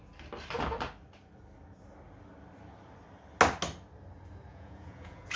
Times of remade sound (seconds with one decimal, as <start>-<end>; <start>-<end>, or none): 4.5-5.4